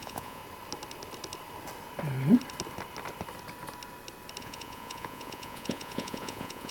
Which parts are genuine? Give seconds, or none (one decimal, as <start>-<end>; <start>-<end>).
0.4-4.4